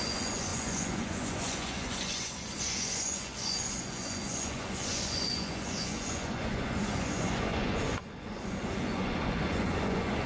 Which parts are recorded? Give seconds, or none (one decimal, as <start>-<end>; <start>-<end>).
none